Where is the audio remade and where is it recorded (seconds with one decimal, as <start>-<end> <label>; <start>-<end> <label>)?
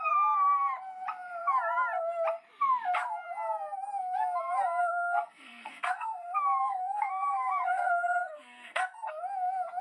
0.0-4.8 recorded; 4.8-9.2 remade; 9.2-9.8 recorded